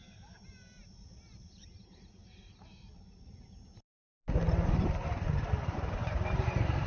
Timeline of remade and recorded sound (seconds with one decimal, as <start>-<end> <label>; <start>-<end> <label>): 0.0-2.2 remade; 2.2-4.5 recorded; 4.5-6.9 remade